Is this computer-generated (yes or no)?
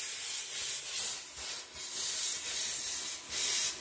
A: no